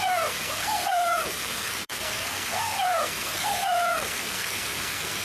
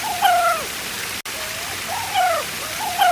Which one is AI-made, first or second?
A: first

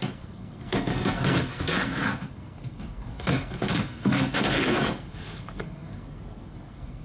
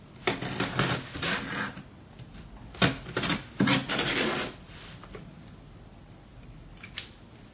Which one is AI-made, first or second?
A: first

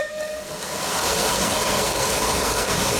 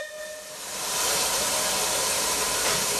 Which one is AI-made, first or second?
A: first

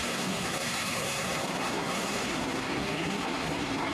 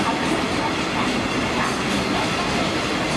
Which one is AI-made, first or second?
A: first